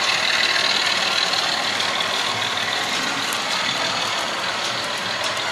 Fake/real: real